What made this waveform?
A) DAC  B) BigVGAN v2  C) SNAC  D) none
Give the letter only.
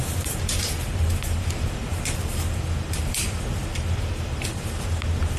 B